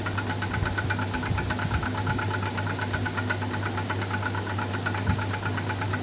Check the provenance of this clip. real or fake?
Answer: real